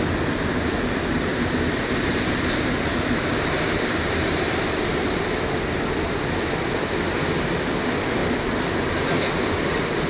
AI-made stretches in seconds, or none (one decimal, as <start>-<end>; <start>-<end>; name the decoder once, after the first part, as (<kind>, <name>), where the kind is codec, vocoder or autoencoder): 1.3-4.3 (vocoder, BigVGAN v2); 8.2-9.0